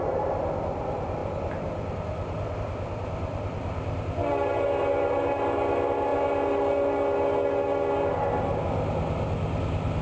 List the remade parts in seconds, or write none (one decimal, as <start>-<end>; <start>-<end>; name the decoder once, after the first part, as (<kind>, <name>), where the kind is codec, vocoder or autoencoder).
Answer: none